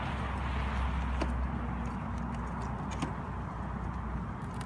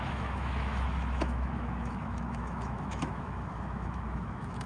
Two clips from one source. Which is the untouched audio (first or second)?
first